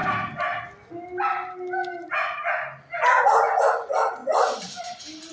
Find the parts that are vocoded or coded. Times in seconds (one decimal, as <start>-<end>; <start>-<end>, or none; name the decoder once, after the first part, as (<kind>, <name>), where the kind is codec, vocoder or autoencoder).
3.2-5.3 (vocoder, BigVGAN v2)